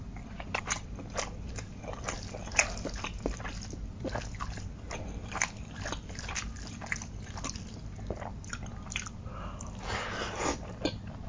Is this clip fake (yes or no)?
no